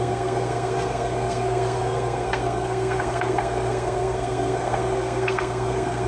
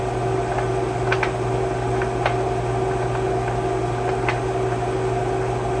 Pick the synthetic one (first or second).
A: first